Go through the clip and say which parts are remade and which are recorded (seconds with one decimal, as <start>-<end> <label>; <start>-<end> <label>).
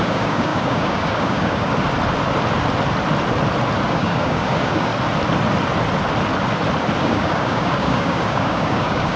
0.0-1.7 remade; 1.7-3.9 recorded; 3.9-4.9 remade; 4.9-7.0 recorded; 7.0-9.2 remade